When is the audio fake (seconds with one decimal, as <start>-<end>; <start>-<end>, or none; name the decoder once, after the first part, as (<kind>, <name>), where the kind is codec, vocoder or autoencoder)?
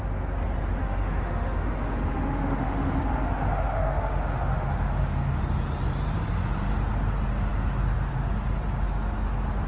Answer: 0.8-5.4 (autoencoder, DAC-VAE)